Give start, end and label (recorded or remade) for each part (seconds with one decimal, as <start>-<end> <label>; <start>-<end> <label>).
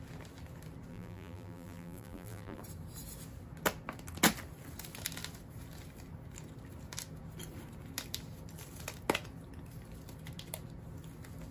0.0-0.9 recorded; 0.9-2.6 remade; 2.6-11.5 recorded